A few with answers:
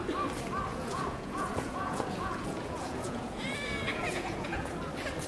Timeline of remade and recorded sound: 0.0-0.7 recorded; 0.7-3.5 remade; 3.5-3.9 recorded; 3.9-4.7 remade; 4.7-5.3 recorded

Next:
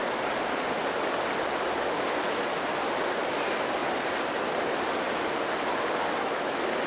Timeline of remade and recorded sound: 0.0-6.9 recorded

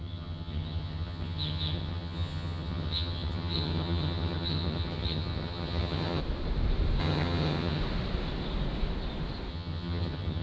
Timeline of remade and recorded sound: 0.0-6.2 remade; 6.2-7.0 recorded; 7.0-7.8 remade; 7.8-9.5 recorded; 9.5-10.4 remade

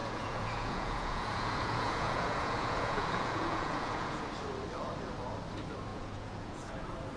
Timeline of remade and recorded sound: 0.0-4.2 remade; 4.2-5.9 recorded; 5.9-6.7 remade; 6.7-7.2 recorded